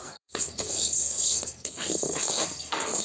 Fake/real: fake